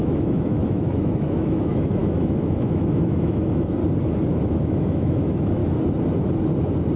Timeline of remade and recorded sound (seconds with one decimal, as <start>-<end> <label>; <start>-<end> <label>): 0.0-3.8 remade; 3.8-4.6 recorded; 4.6-5.6 remade; 5.6-7.0 recorded

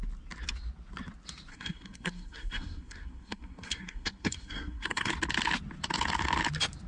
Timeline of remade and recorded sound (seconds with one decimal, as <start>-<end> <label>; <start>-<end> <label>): 0.0-1.5 recorded; 1.5-5.1 remade; 5.1-6.9 recorded

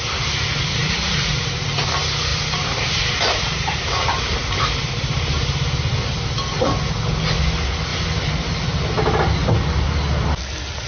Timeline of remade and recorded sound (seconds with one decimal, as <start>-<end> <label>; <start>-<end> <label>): 0.0-0.8 recorded; 0.8-1.7 remade; 1.7-2.3 recorded; 2.3-5.9 remade; 5.9-10.9 recorded